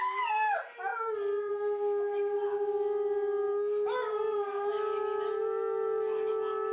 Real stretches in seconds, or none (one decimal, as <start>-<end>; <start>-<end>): 0.0-6.7